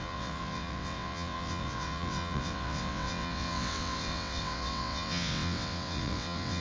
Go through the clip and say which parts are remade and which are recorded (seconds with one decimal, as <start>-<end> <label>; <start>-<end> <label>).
0.0-6.6 remade